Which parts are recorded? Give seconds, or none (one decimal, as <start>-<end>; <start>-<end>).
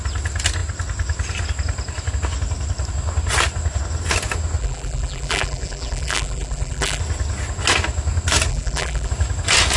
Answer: 0.0-4.6; 7.0-8.5; 9.1-9.8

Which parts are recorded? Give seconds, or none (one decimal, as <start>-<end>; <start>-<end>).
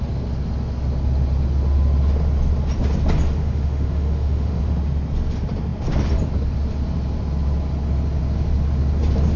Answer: 0.0-3.4; 4.6-9.4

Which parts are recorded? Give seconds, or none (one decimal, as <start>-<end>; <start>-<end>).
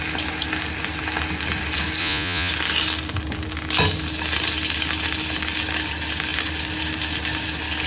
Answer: 0.0-2.0; 2.5-7.9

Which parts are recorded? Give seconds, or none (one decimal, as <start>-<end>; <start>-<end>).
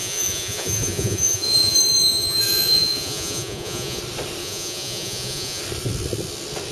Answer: 4.0-4.4; 5.6-6.7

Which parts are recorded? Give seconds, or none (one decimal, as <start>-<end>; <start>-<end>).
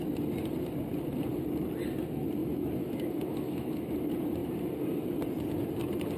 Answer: 0.0-2.4; 3.9-6.2